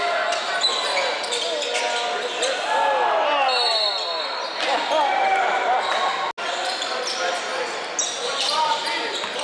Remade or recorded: recorded